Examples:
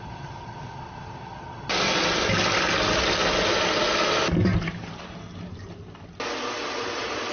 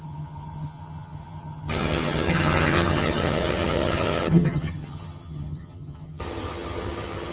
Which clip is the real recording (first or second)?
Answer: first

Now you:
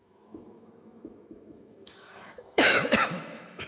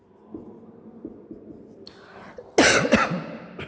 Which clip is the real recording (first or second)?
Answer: second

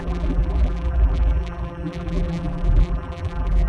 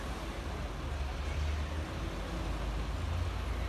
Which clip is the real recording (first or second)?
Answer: second